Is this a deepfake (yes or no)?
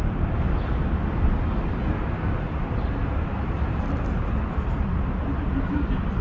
no